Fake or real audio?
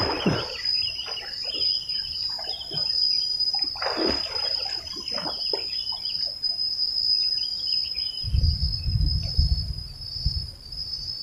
real